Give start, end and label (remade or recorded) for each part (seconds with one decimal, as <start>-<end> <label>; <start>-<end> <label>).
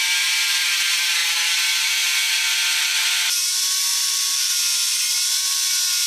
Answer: 0.0-3.9 recorded; 3.9-4.5 remade; 4.5-6.1 recorded